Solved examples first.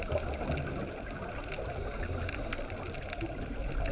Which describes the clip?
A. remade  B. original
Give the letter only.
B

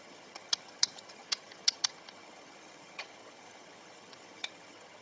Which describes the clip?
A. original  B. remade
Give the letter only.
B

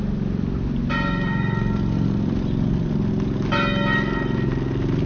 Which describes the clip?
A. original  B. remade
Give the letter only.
A